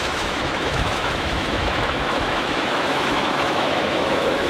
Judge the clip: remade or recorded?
remade